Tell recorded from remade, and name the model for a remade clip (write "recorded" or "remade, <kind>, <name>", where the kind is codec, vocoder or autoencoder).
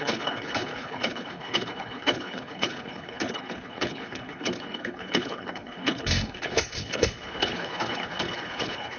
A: remade, codec, HILCodec